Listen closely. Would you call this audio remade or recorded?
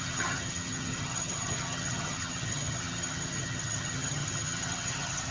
remade